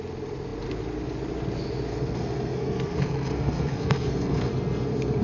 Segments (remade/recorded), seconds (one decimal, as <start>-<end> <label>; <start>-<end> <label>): 0.0-1.9 recorded; 1.9-5.2 remade